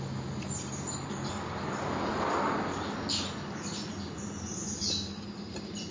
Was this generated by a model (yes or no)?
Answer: no